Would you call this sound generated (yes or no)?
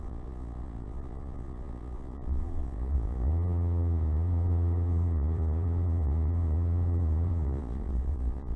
yes